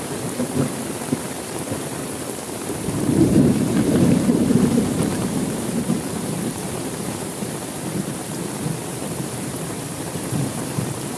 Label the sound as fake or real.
fake